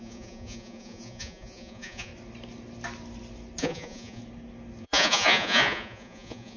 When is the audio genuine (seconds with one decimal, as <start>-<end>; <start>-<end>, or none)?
2.1-3.6; 4.2-4.8